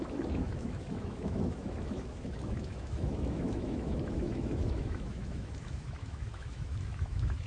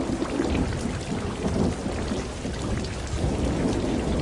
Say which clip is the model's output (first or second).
first